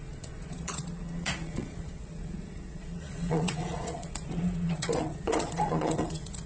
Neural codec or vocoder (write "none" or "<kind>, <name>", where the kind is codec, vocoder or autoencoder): vocoder, Vocos